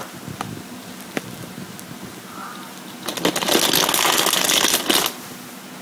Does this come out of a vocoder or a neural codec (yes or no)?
no